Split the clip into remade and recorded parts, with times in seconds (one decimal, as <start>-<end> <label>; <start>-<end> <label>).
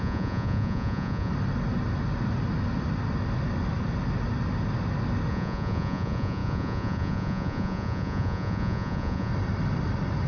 0.0-1.3 remade; 1.3-5.3 recorded; 5.3-9.3 remade; 9.3-10.3 recorded